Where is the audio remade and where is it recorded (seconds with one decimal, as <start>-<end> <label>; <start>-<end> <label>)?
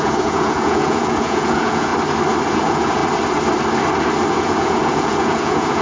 0.0-1.9 remade; 1.9-2.5 recorded; 2.5-3.0 remade; 3.0-4.3 recorded; 4.3-5.8 remade